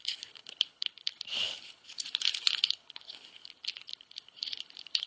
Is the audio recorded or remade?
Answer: remade